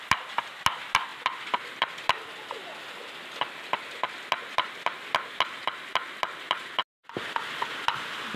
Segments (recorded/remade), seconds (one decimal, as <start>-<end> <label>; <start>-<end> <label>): 0.0-8.4 recorded